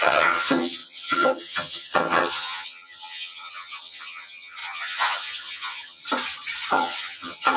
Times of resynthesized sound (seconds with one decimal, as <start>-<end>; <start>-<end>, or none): 0.0-6.0; 6.7-7.6